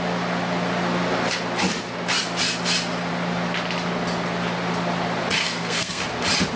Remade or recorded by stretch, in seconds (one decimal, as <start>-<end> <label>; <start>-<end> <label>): 0.0-5.4 recorded; 5.4-6.0 remade; 6.0-6.6 recorded